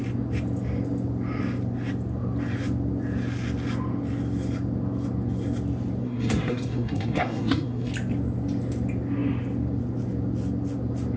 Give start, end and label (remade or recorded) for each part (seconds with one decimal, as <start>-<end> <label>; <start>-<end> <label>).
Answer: 0.0-6.0 recorded; 6.0-7.9 remade; 7.9-11.2 recorded